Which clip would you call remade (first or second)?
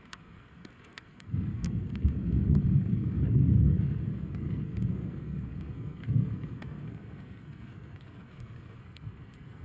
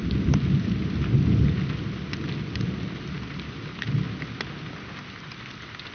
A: first